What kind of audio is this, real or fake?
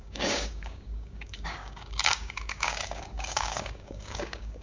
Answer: fake